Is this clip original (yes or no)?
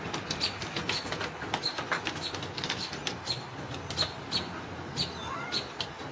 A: yes